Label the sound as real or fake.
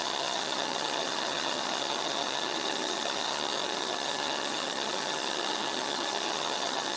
fake